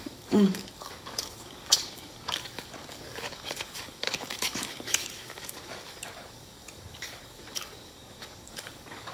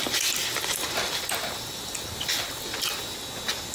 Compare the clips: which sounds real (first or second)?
second